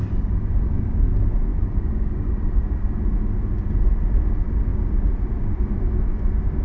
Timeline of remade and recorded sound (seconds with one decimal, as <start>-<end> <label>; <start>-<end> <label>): 0.0-1.5 recorded; 1.5-2.4 remade; 2.4-6.6 recorded